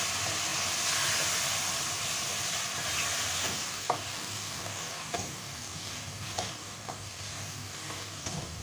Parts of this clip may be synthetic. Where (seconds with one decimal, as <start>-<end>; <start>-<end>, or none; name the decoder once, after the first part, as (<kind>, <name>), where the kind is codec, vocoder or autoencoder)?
3.4-8.6 (codec, DAC)